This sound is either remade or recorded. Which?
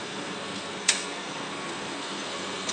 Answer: remade